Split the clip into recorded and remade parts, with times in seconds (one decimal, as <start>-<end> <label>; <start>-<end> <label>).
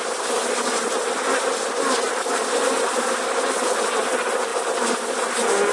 0.0-5.7 recorded